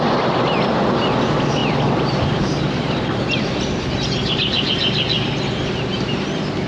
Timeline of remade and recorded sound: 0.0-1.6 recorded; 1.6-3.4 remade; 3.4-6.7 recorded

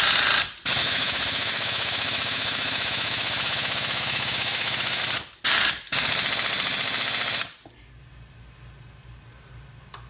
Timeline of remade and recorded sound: 0.0-0.8 recorded; 0.8-5.0 remade; 5.0-10.1 recorded

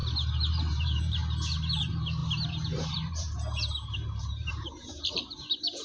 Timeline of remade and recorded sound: 0.0-0.5 recorded; 0.5-1.2 remade; 1.2-1.8 recorded; 1.8-5.8 remade

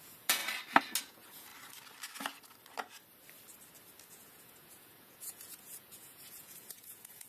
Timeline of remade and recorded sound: 0.0-0.4 remade; 0.4-1.0 recorded; 1.0-1.5 remade; 1.5-4.1 recorded; 4.1-7.3 remade

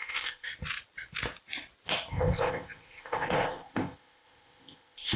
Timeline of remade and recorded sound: 0.0-0.5 remade; 0.5-2.1 recorded; 2.1-5.2 remade

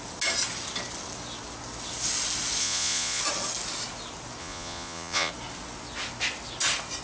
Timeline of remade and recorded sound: 0.0-2.6 recorded; 2.6-3.2 remade; 3.2-4.4 recorded; 4.4-5.3 remade; 5.3-7.0 recorded

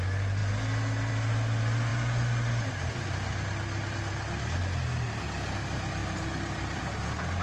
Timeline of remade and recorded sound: 0.0-1.9 recorded; 1.9-2.9 remade; 2.9-6.0 recorded; 6.0-6.8 remade; 6.8-7.4 recorded